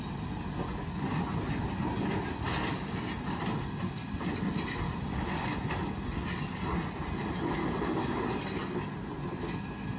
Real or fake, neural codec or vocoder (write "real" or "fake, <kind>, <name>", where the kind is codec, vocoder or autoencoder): real